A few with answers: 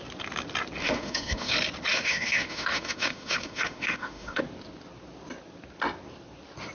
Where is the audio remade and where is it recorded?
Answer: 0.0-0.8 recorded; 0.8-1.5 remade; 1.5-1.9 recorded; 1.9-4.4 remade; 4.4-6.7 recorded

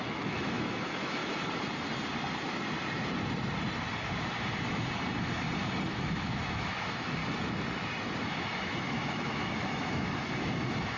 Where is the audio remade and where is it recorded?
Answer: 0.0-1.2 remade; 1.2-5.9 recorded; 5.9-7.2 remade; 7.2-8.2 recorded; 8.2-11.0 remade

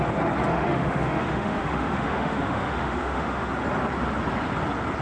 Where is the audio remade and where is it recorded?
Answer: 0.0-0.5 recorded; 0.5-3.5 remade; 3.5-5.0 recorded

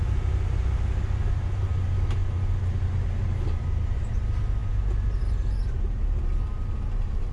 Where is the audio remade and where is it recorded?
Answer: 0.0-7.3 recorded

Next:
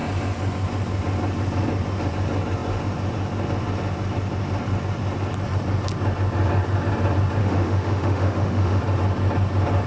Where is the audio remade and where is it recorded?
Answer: 0.0-7.4 recorded; 7.4-8.8 remade; 8.8-9.9 recorded

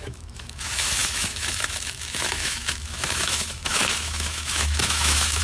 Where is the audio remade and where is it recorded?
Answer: 0.0-5.4 remade